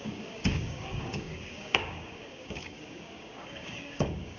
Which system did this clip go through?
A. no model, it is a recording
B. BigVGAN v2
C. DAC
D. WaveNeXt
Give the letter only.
C